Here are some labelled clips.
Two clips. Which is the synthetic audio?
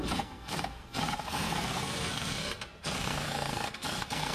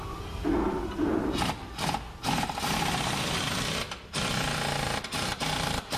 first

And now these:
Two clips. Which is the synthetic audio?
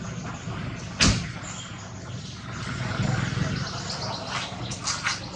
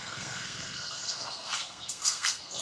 second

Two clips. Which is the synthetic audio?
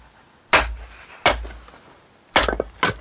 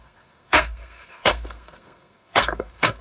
second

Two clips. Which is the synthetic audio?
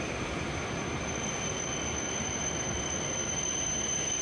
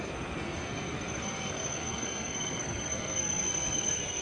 second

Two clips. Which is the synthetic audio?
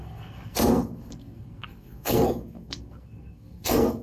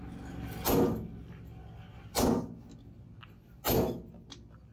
first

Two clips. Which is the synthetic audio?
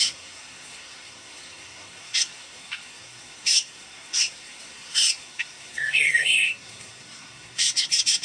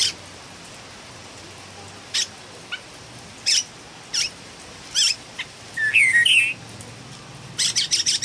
first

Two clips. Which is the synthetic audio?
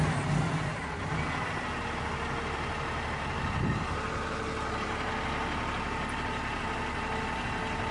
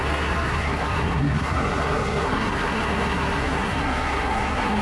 second